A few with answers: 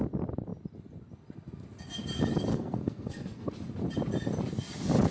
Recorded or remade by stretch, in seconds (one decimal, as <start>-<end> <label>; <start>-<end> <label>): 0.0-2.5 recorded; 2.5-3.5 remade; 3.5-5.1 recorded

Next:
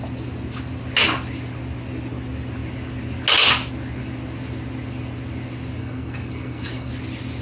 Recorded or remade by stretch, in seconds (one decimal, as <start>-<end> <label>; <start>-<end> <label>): 0.0-5.8 recorded; 5.8-6.9 remade; 6.9-7.4 recorded

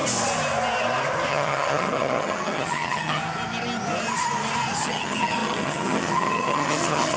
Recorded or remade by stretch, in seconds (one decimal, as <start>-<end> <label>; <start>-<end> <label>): 0.0-1.3 recorded; 1.3-3.2 remade; 3.2-4.8 recorded; 4.8-7.2 remade

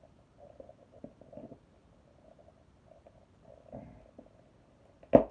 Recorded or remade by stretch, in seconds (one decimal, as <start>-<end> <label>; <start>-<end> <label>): 0.0-5.3 recorded

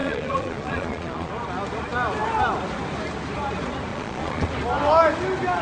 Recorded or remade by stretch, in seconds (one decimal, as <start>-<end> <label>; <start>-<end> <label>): 0.0-1.3 remade; 1.3-3.9 recorded; 3.9-4.5 remade; 4.5-5.6 recorded